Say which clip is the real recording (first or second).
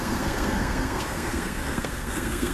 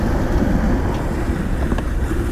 second